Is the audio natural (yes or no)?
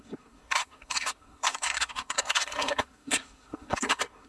no